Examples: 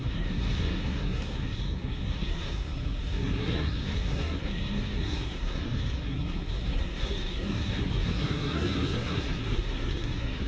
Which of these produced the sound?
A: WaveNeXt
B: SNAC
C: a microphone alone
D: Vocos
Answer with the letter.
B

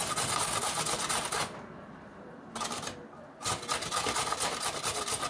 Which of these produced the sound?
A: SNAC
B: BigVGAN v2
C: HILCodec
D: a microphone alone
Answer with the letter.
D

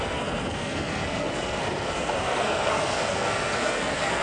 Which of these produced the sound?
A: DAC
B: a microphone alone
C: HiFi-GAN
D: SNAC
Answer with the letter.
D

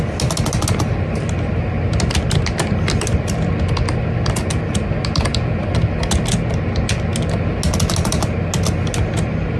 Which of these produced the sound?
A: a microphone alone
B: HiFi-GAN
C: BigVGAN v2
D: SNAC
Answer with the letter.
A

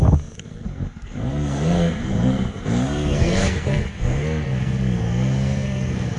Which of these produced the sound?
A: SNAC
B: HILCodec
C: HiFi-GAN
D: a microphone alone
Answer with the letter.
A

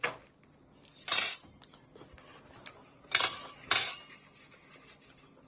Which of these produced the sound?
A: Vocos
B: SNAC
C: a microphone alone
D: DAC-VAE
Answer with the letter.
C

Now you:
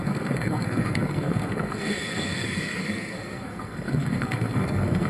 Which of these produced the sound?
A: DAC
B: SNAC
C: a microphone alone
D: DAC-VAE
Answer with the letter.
B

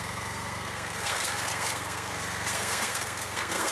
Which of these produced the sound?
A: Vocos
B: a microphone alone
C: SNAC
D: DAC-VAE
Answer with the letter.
C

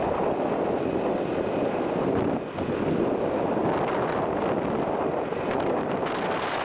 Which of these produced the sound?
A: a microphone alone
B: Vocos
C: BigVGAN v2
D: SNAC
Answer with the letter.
A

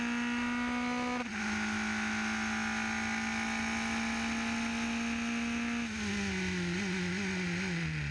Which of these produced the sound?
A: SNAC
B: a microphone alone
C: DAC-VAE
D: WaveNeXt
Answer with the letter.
B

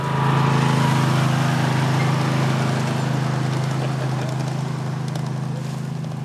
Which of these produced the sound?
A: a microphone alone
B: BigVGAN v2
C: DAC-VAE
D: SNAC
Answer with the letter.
A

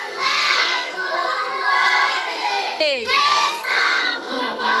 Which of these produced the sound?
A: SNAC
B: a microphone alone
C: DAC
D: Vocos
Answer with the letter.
A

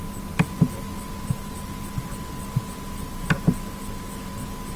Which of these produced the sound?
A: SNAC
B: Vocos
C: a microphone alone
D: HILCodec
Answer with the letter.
C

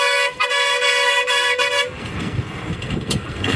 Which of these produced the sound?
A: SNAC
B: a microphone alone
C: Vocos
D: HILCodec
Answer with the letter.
A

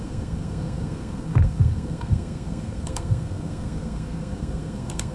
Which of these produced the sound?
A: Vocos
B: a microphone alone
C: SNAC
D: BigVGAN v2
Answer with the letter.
C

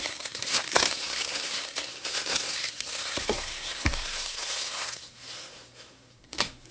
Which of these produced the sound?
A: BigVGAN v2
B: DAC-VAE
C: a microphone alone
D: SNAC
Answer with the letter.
D